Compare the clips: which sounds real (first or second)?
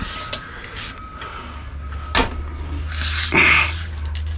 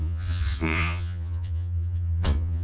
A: first